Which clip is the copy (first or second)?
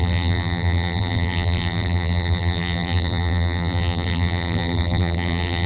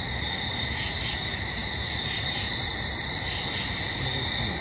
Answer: first